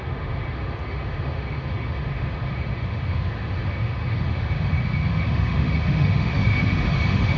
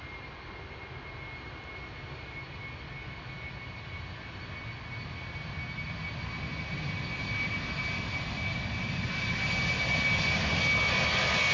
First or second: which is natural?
second